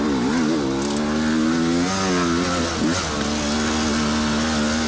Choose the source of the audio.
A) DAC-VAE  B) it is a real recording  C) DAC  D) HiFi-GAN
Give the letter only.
B